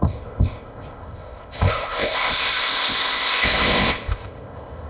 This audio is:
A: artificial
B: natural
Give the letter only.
A